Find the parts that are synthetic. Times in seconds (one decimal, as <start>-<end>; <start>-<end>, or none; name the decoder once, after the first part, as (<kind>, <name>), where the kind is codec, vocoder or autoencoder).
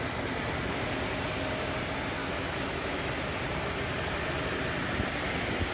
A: 2.2-3.0 (autoencoder, DAC-VAE)